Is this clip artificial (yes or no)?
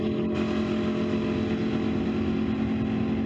no